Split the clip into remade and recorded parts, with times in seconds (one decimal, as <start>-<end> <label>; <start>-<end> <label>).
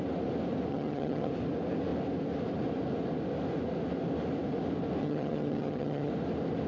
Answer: 0.0-0.7 recorded; 0.7-1.3 remade; 1.3-5.0 recorded; 5.0-6.1 remade; 6.1-6.7 recorded